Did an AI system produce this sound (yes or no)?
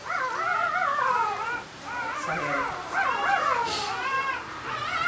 no